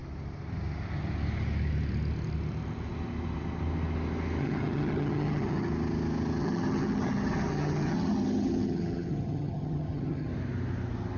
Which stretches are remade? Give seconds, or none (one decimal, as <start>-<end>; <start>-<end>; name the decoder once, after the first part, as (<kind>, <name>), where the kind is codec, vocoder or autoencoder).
4.4-5.7 (vocoder, HiFi-GAN); 6.4-10.3